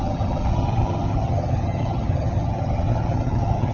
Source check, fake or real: fake